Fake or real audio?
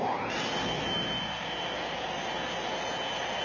real